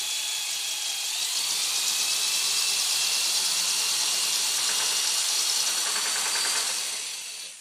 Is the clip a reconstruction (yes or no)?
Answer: no